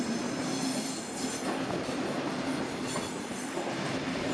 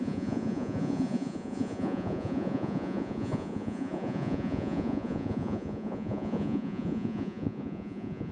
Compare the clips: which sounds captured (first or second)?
first